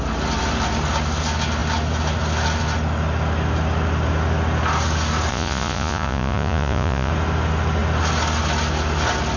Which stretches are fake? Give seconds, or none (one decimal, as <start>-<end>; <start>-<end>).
5.3-7.1

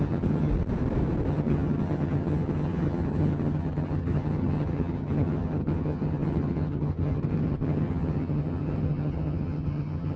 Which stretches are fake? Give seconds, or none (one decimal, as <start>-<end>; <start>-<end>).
0.0-0.5; 1.3-10.2